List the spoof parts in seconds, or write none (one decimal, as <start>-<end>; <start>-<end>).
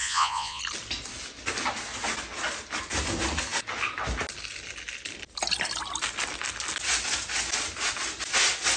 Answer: 0.0-0.6